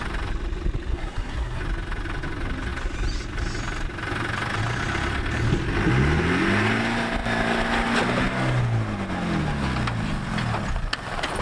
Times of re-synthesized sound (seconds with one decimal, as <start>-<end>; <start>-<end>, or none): 0.9-1.6